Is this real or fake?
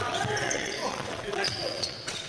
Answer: fake